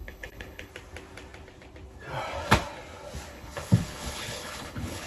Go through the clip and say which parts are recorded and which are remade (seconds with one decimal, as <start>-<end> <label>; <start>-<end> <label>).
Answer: 0.0-0.7 remade; 0.7-3.3 recorded; 3.3-5.1 remade